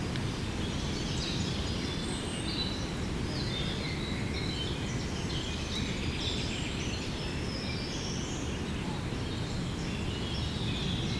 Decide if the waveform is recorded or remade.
recorded